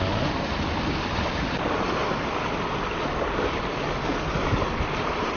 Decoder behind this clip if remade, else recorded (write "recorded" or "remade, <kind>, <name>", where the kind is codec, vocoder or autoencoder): recorded